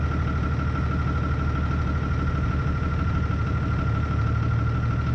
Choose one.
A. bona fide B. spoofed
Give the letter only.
A